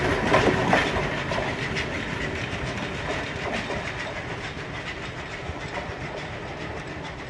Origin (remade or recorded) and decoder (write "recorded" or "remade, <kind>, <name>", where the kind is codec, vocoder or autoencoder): recorded